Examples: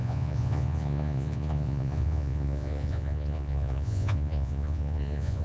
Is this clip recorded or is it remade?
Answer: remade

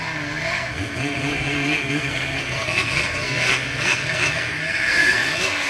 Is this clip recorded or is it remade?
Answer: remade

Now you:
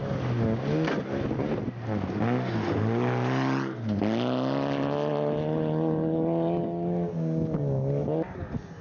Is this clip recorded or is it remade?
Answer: recorded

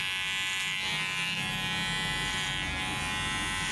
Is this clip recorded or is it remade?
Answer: recorded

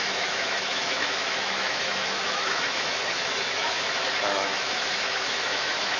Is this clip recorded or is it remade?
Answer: remade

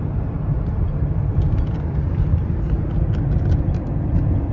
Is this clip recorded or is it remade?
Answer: recorded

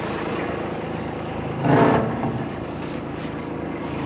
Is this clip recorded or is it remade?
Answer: remade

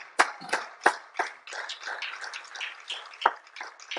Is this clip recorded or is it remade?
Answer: recorded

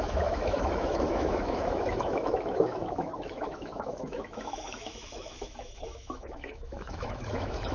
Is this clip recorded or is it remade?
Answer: remade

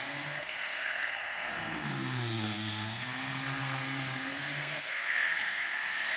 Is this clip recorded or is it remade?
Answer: remade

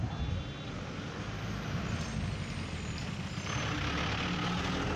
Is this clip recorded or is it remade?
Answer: recorded